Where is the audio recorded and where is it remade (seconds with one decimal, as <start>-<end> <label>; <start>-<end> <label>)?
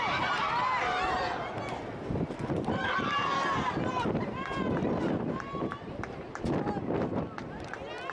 0.0-3.2 recorded; 3.2-6.6 remade; 6.6-8.1 recorded